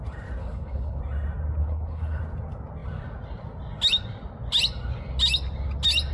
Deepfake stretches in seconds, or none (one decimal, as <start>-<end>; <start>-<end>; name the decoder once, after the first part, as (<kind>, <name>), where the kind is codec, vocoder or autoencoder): 0.4-1.0 (codec, HILCodec); 1.6-2.2